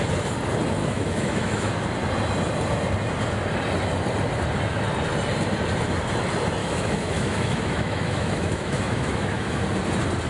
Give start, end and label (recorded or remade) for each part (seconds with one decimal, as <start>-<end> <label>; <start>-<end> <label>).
0.0-0.8 recorded; 0.8-1.7 remade; 1.7-6.6 recorded; 6.6-9.6 remade; 9.6-10.3 recorded